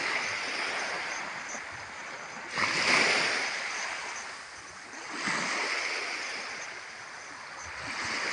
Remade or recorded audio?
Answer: recorded